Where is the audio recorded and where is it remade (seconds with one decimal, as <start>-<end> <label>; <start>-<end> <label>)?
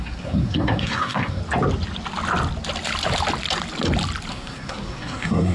0.0-1.4 remade; 1.4-4.3 recorded; 4.3-5.5 remade